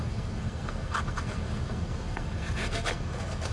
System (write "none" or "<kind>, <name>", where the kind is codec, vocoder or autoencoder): codec, SNAC